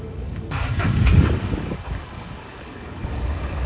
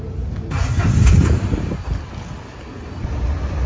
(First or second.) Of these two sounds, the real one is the second